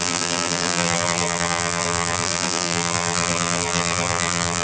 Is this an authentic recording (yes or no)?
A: no